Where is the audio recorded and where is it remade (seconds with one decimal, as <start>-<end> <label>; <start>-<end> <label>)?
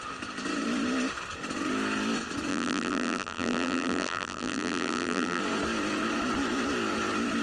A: 0.0-2.5 recorded; 2.5-5.4 remade; 5.4-7.4 recorded